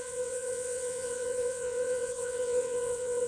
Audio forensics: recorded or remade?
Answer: remade